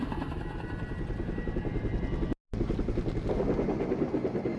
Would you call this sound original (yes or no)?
yes